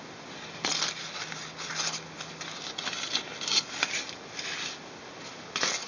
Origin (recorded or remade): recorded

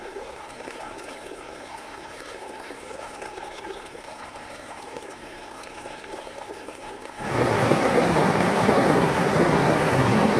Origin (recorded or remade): remade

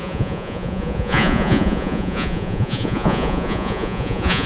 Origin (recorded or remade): remade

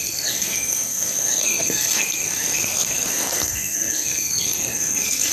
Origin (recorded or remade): remade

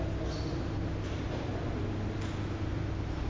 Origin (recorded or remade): recorded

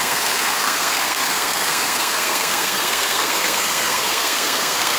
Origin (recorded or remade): remade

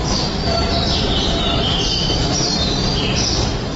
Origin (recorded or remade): remade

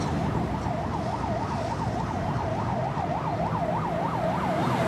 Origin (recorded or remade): recorded